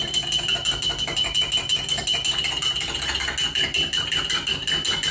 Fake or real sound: real